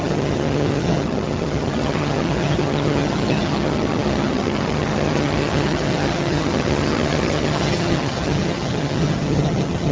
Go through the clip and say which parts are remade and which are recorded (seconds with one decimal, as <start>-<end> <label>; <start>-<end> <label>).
0.0-9.9 remade